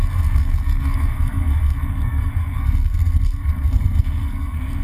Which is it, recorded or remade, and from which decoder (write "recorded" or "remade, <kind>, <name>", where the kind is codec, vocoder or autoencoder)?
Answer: remade, codec, SNAC